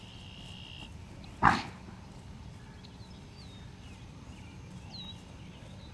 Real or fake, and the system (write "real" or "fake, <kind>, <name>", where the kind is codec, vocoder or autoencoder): real